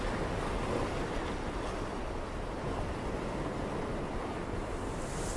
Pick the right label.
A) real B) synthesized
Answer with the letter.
A